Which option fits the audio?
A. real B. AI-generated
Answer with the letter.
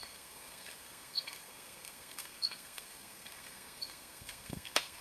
B